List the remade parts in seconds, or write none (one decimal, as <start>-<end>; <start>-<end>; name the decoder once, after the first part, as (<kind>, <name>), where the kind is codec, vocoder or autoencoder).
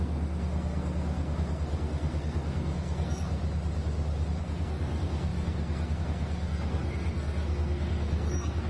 0.0-3.4 (codec, SNAC); 4.4-8.7